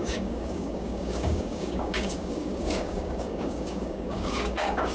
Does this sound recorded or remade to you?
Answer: remade